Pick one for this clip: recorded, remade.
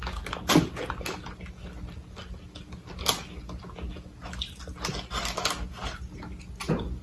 recorded